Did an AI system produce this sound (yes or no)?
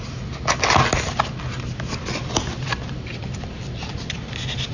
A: no